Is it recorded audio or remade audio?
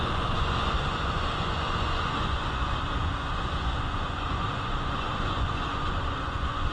remade